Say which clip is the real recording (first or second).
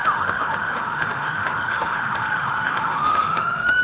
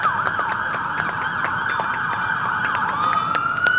second